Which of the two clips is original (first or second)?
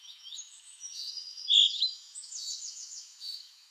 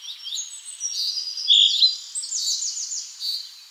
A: second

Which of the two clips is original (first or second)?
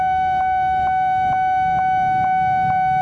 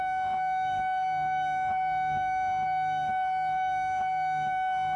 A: first